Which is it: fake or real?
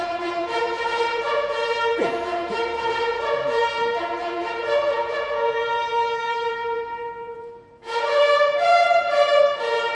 fake